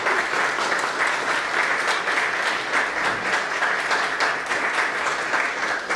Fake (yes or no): no